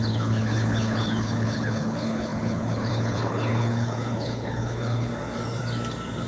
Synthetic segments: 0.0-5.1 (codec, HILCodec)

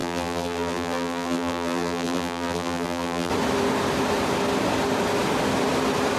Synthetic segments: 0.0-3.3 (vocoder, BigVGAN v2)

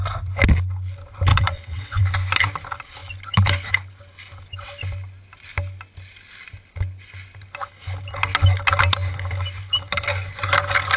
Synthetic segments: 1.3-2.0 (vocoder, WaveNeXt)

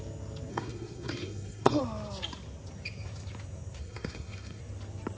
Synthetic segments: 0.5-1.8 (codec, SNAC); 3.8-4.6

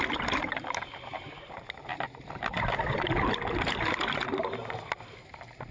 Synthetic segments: 1.9-2.6 (vocoder, BigVGAN v2)

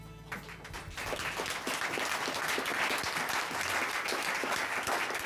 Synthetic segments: none